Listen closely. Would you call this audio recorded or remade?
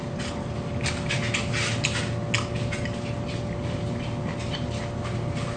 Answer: recorded